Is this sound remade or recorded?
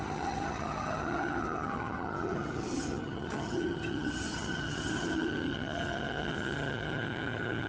remade